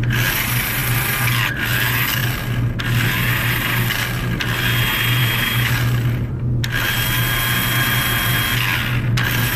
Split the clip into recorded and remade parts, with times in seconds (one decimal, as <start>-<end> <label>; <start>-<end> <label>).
0.0-5.2 recorded; 5.2-5.7 remade; 5.7-9.6 recorded